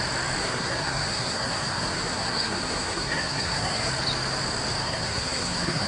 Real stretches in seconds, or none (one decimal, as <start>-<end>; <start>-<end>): 0.0-0.4; 3.9-4.8